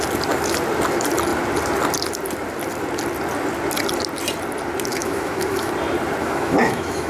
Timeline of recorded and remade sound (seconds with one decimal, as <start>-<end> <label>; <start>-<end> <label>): 0.0-4.9 recorded; 4.9-5.7 remade; 5.7-6.2 recorded; 6.2-7.1 remade